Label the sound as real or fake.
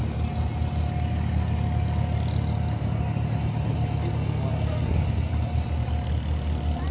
real